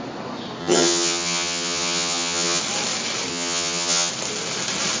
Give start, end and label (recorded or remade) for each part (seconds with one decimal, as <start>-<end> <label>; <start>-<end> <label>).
0.0-0.6 recorded; 0.6-2.6 remade; 2.6-3.3 recorded; 3.3-4.1 remade; 4.1-5.0 recorded